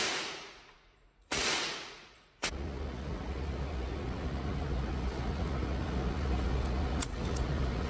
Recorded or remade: remade